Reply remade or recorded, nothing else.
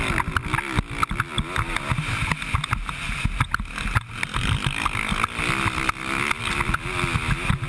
recorded